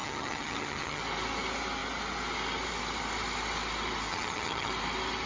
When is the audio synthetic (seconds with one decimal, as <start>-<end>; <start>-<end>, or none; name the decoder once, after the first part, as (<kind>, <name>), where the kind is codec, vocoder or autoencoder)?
0.0-1.0 (vocoder, HiFi-GAN); 4.1-4.7